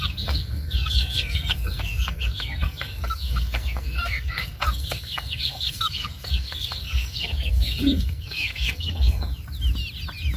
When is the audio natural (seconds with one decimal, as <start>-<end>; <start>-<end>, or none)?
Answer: 9.3-10.4